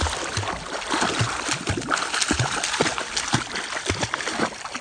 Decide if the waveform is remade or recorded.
recorded